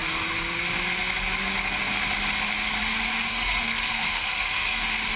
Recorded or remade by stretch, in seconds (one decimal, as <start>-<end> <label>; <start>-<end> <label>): 0.0-3.3 recorded; 3.3-4.8 remade; 4.8-5.2 recorded

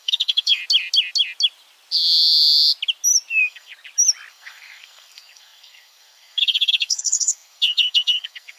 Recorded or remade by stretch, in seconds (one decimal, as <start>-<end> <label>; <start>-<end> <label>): 0.0-0.6 remade; 0.6-3.3 recorded; 3.3-3.7 remade; 3.7-4.3 recorded; 4.3-8.6 remade

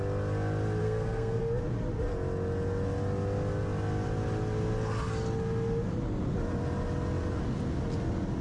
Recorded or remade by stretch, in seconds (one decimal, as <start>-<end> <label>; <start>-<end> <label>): 0.0-0.8 recorded; 0.8-1.4 remade; 1.4-8.4 recorded